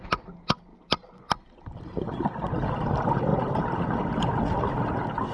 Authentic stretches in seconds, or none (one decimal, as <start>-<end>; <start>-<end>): 0.0-5.3